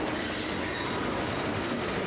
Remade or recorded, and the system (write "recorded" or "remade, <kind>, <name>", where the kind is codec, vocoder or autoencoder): recorded